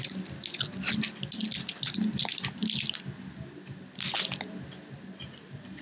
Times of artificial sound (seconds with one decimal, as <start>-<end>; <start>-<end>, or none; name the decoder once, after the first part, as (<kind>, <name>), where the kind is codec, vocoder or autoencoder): none